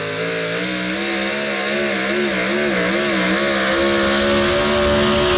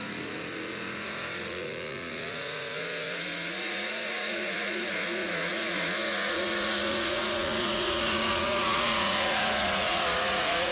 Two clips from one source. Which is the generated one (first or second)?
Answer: second